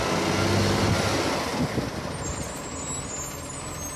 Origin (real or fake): real